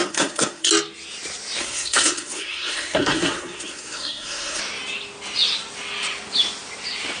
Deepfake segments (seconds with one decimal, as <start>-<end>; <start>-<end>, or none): 0.0-0.7; 1.6-4.6